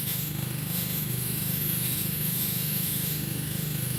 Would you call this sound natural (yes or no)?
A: no